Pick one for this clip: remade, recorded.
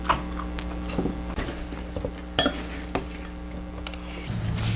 recorded